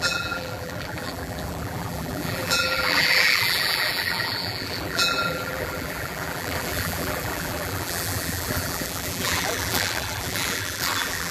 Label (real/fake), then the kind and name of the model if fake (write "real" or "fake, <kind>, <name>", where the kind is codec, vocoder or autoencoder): fake, vocoder, BigVGAN v2